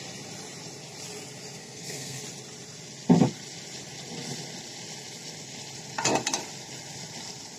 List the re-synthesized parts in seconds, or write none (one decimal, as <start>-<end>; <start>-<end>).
1.6-2.2